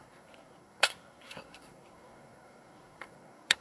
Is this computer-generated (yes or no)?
yes